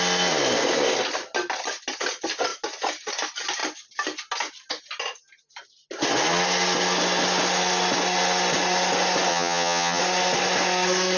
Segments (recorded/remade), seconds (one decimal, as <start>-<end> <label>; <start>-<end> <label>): 0.0-9.3 recorded; 9.3-10.0 remade; 10.0-11.2 recorded